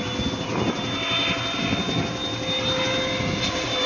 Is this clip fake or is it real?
real